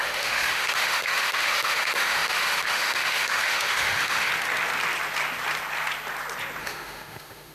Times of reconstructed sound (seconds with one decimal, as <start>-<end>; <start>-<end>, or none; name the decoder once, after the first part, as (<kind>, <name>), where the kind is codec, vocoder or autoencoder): 0.0-4.3 (autoencoder, DAC-VAE); 6.6-7.5